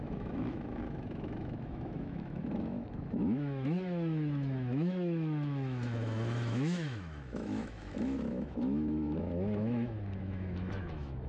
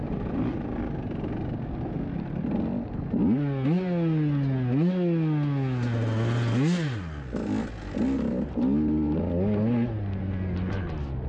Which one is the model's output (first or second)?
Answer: first